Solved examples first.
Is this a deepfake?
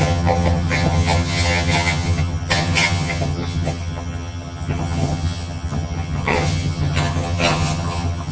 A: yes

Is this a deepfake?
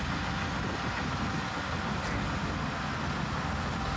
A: no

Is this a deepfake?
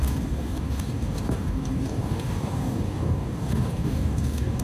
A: yes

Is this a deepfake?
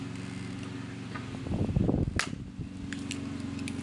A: no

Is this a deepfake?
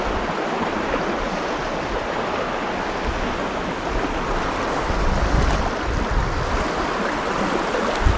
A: no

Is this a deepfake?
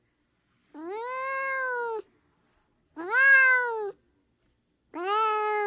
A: no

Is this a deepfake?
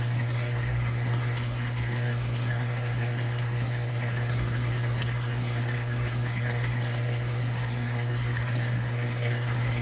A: yes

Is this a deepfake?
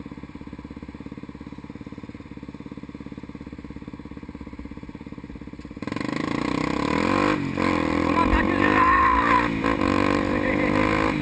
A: no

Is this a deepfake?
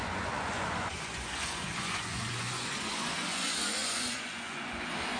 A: yes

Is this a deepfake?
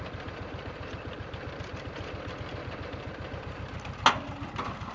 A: no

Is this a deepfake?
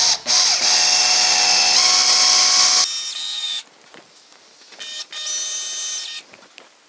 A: no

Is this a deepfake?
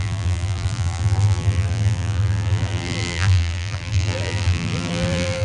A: yes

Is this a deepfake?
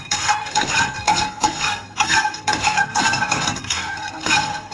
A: yes